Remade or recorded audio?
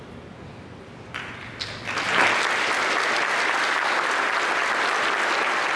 recorded